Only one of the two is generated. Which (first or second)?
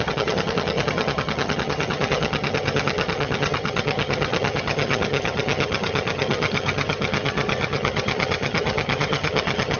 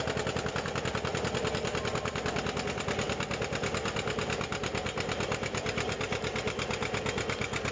first